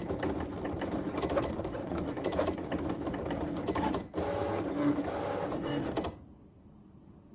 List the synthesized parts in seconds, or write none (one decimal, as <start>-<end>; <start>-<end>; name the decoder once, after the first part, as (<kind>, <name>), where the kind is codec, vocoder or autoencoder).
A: 1.8-2.7 (vocoder, Vocos)